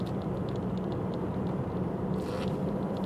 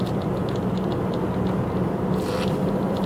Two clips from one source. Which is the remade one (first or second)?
first